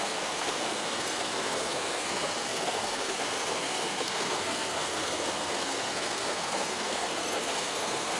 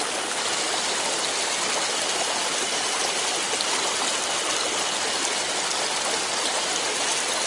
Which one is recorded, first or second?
second